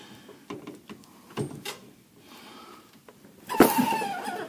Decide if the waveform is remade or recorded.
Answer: recorded